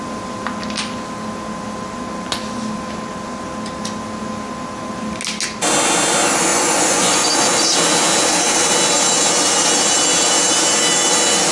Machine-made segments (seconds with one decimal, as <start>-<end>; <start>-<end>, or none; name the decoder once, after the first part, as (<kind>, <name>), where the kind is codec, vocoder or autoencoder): 6.5-7.3 (vocoder, Vocos)